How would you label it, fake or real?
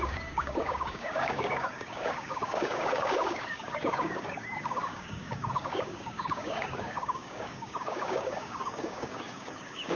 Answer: fake